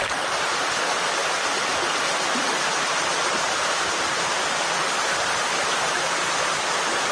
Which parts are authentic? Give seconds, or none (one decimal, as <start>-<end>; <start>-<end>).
0.0-7.1